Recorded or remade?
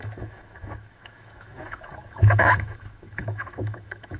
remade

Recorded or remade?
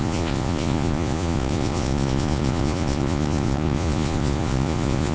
remade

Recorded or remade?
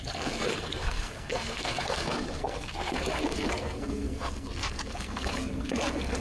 remade